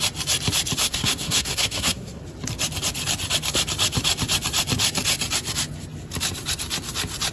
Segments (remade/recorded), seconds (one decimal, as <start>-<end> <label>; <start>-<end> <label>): 0.0-0.8 recorded; 0.8-2.2 remade; 2.2-7.3 recorded